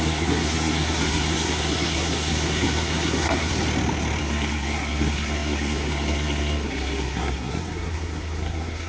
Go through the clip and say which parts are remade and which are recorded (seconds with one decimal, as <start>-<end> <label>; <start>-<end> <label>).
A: 0.0-3.5 remade; 3.5-4.2 recorded; 4.2-8.9 remade